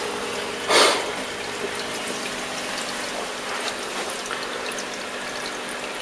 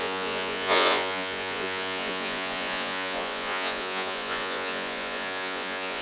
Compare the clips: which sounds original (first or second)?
first